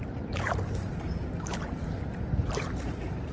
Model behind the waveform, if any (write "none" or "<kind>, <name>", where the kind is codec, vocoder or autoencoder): vocoder, BigVGAN v2